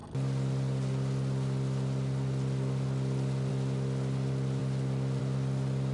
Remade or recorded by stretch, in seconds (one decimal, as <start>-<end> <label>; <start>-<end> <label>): 0.0-5.9 recorded